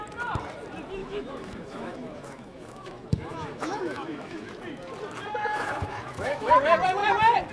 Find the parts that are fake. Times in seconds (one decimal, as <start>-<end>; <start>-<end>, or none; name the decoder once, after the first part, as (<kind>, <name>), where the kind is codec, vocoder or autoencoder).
1.0-4.5 (autoencoder, DAC-VAE); 5.5-6.5